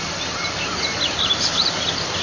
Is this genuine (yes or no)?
yes